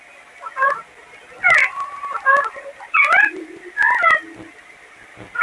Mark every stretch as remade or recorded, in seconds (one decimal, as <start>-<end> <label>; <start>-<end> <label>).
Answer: 0.0-1.6 recorded; 1.6-3.7 remade; 3.7-5.4 recorded